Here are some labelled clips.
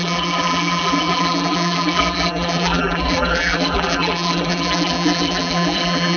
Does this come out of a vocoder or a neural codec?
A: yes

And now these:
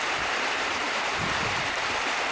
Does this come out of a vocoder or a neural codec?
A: yes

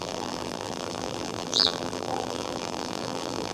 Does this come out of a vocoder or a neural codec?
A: yes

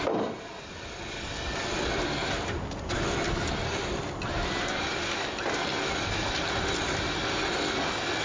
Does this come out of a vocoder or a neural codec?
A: no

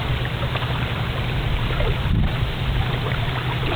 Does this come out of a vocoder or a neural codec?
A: yes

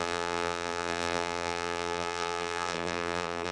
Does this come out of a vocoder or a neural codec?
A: yes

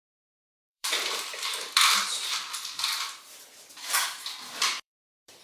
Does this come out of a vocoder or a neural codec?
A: yes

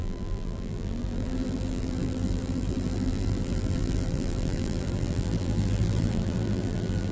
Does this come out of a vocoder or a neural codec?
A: yes